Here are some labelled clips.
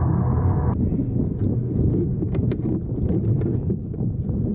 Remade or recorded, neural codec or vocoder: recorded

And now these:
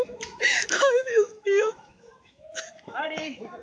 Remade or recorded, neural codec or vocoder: remade, autoencoder, DAC-VAE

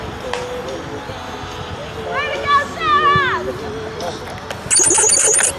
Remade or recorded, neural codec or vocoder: recorded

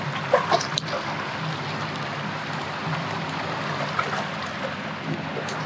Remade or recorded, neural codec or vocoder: recorded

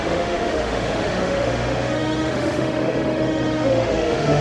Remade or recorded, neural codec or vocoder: remade, autoencoder, DAC-VAE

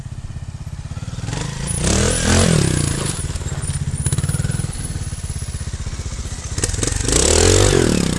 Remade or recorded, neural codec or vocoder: recorded